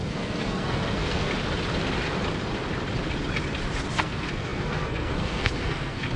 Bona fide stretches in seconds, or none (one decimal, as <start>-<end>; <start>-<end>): 1.3-3.9